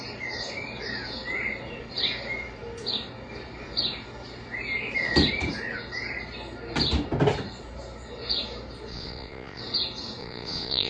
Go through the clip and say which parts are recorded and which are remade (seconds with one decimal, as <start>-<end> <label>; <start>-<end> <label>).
0.0-8.9 recorded; 8.9-9.6 remade; 9.6-10.2 recorded; 10.2-10.9 remade